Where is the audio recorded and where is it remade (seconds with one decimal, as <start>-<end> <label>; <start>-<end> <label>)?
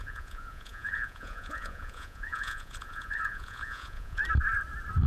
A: 0.0-4.2 remade; 4.2-5.1 recorded